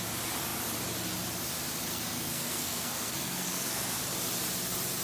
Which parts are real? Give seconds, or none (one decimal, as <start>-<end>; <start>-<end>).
0.0-1.9; 4.0-5.0